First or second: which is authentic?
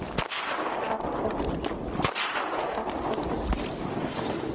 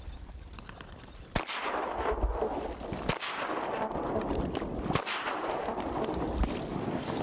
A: first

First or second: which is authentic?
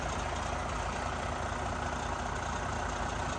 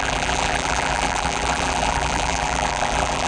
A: first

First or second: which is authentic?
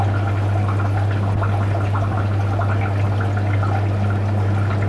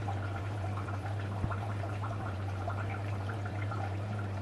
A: first